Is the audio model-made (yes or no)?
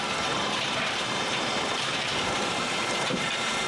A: yes